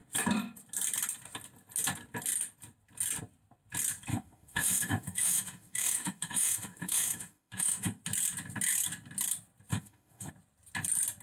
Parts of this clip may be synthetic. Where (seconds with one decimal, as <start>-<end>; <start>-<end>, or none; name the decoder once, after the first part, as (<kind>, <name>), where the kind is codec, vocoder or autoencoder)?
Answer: 4.1-8.0 (autoencoder, DAC-VAE); 9.7-10.3